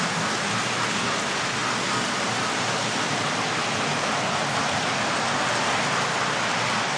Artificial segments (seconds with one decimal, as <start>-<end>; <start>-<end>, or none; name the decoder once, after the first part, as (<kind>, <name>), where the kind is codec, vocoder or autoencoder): none